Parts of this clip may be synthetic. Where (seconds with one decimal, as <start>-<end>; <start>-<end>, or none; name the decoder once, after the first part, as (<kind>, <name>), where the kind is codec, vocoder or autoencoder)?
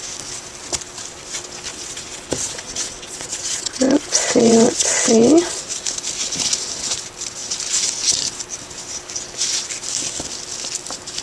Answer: 1.7-5.7 (vocoder, WaveNeXt)